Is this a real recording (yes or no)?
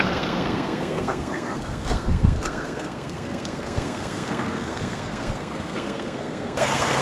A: no